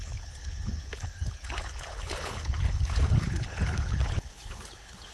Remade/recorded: remade